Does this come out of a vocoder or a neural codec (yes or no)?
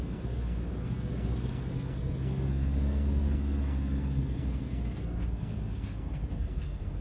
yes